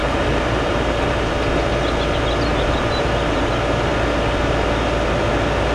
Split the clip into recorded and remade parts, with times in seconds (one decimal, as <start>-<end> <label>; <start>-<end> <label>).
0.0-1.3 remade; 1.3-2.5 recorded; 2.5-3.5 remade; 3.5-5.7 recorded